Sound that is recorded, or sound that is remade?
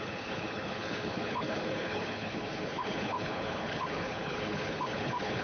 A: remade